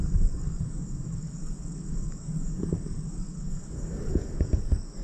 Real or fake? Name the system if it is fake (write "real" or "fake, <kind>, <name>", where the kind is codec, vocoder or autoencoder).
fake, codec, DAC